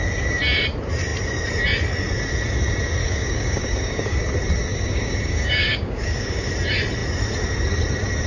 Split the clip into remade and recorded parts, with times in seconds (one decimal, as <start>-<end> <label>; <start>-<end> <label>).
0.0-3.0 recorded; 3.0-4.3 remade; 4.3-4.7 recorded; 4.7-6.5 remade; 6.5-8.3 recorded